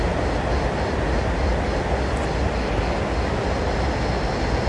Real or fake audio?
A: real